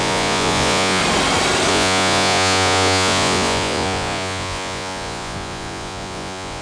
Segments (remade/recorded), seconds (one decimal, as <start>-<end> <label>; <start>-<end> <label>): 0.0-1.0 remade; 1.0-1.7 recorded; 1.7-6.6 remade